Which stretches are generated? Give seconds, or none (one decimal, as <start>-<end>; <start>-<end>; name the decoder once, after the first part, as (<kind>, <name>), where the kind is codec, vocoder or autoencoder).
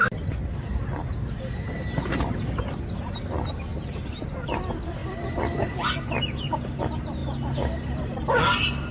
3.7-4.6 (vocoder, BigVGAN v2); 5.0-6.8; 7.2-8.4